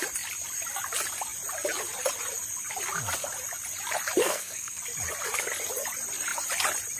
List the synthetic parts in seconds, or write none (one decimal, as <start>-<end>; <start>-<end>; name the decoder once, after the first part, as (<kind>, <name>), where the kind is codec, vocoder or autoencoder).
4.2-4.8 (codec, SNAC)